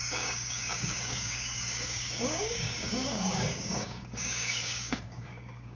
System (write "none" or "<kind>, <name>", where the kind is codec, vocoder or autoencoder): codec, DAC